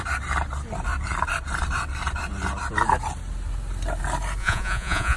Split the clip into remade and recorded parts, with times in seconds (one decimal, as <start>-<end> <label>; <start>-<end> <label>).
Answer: 0.0-4.4 recorded; 4.4-5.2 remade